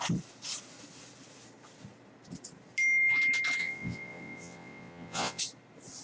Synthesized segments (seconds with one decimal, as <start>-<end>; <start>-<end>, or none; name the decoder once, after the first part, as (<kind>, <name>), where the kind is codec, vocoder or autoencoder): 3.6-5.4 (vocoder, WaveNeXt)